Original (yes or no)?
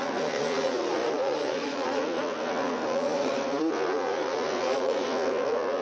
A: no